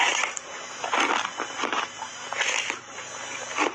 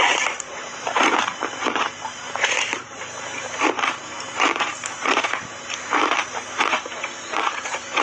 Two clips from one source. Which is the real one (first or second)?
first